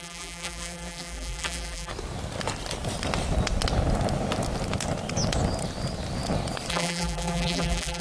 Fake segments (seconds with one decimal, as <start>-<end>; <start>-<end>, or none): 0.0-1.9; 6.7-8.0